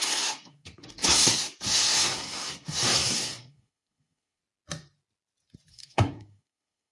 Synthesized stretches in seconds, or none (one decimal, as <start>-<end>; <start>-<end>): 0.0-4.4; 5.7-6.9